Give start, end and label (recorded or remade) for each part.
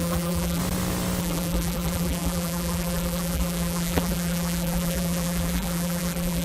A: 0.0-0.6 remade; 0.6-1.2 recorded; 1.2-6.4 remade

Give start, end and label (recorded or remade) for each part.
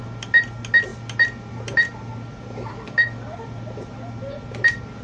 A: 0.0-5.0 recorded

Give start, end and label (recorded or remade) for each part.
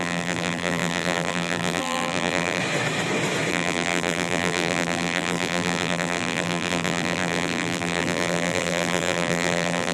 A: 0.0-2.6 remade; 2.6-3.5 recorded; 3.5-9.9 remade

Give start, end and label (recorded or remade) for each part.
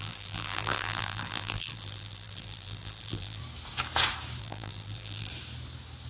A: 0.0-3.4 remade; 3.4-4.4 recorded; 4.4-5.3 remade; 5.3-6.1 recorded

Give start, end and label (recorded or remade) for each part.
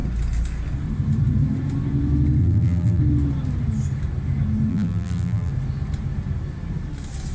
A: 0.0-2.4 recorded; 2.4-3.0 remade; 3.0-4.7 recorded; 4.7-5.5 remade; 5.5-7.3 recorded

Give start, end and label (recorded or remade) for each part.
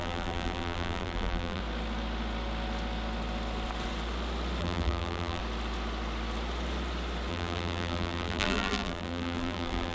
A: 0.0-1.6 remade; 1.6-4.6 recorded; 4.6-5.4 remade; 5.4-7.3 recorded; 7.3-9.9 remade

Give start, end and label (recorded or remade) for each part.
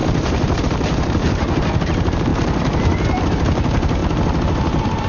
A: 0.0-4.0 remade; 4.0-5.1 recorded